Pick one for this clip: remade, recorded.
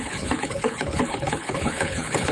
remade